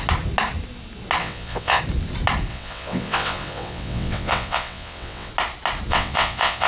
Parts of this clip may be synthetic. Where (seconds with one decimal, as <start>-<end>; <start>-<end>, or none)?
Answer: 1.2-1.8; 2.5-5.3; 5.9-6.7